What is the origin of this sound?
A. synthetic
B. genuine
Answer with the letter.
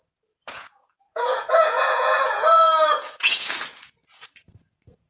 A